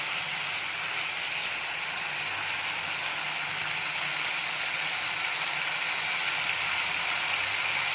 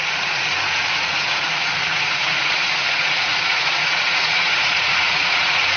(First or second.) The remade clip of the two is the second